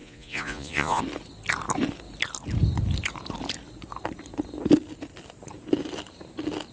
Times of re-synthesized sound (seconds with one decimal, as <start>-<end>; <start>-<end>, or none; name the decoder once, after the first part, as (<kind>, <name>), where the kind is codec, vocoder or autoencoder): 0.0-1.0 (vocoder, Vocos)